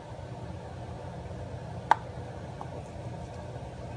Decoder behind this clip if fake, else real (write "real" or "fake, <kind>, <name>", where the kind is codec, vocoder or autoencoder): real